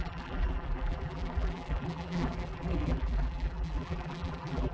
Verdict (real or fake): fake